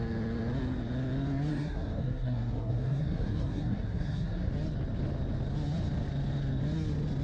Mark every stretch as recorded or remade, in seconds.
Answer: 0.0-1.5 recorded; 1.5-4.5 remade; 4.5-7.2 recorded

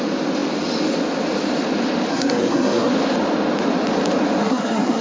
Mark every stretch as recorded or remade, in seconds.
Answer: 0.0-2.1 recorded; 2.1-2.9 remade; 2.9-4.4 recorded; 4.4-5.0 remade

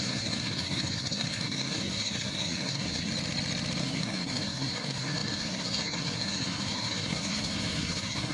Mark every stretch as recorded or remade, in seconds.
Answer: 0.0-3.1 remade; 3.1-3.8 recorded; 3.8-8.3 remade

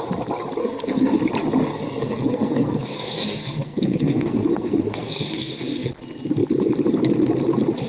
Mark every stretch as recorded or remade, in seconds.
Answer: 0.0-0.6 recorded; 0.6-1.2 remade; 1.2-1.7 recorded; 1.7-5.9 remade; 5.9-7.9 recorded

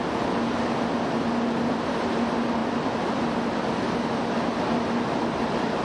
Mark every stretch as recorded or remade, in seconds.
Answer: 0.0-5.8 recorded

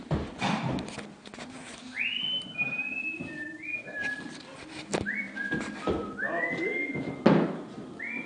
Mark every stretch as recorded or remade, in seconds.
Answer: 0.0-8.3 recorded

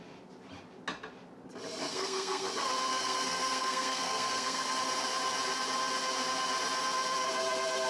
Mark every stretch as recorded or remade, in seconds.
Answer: 0.0-1.9 recorded; 1.9-2.5 remade; 2.5-2.9 recorded; 2.9-4.8 remade; 4.8-7.9 recorded

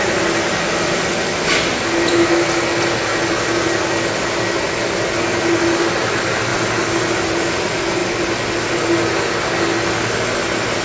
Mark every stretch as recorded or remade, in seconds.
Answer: 0.0-10.8 recorded